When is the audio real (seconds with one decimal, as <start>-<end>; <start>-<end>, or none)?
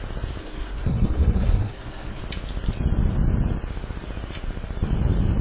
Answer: 0.0-0.4; 2.2-5.4